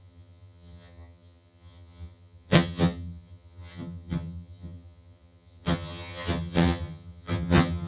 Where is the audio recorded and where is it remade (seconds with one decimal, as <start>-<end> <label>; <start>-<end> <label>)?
0.0-7.9 remade